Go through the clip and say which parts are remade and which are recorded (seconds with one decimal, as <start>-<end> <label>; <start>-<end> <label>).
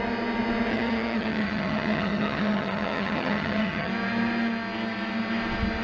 0.0-0.7 recorded; 0.7-3.9 remade; 3.9-5.8 recorded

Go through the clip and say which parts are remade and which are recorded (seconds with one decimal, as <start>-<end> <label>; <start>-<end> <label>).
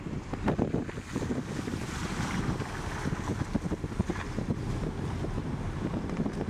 0.0-6.5 recorded